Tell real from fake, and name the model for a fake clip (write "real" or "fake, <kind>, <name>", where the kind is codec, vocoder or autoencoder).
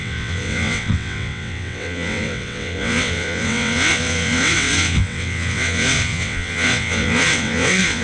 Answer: fake, vocoder, WaveNeXt